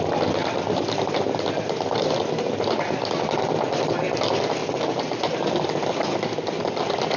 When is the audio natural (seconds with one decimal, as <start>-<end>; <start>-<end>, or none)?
0.0-7.2